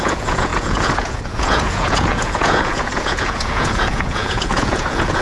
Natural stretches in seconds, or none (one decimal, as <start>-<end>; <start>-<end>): none